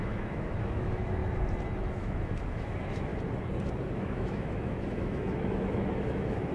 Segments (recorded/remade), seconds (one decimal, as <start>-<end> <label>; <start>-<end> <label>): 0.0-1.2 remade; 1.2-1.9 recorded; 1.9-3.1 remade; 3.1-3.8 recorded; 3.8-6.5 remade